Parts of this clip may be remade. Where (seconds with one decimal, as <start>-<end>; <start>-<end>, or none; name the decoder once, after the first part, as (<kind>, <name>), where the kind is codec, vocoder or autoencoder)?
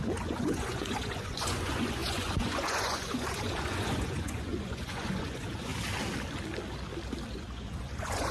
0.0-5.7 (vocoder, Vocos); 7.3-8.3